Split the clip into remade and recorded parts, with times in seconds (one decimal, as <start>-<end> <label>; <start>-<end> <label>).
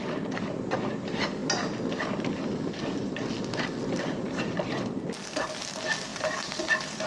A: 0.0-7.1 recorded